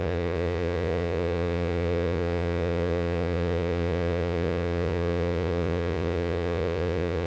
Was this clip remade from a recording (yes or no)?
yes